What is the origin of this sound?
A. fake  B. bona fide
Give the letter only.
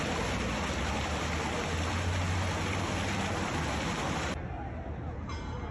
B